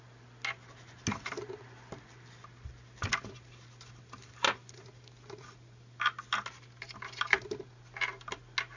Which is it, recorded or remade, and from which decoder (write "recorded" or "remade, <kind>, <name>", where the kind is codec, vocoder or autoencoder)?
recorded